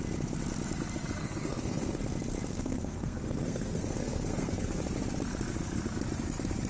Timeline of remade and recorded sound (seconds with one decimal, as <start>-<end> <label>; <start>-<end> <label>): 0.0-1.2 recorded; 1.2-2.0 remade; 2.0-2.5 recorded; 2.5-4.8 remade; 4.8-6.7 recorded